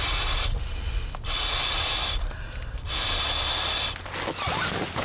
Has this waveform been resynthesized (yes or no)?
no